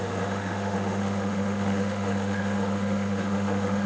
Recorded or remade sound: remade